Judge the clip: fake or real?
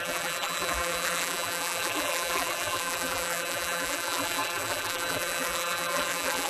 fake